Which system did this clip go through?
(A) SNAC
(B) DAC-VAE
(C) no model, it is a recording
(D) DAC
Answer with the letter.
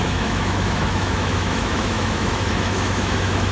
B